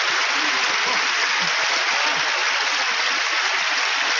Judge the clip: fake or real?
real